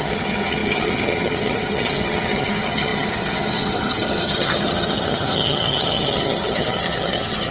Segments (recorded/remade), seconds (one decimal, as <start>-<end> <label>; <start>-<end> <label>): 0.0-7.5 remade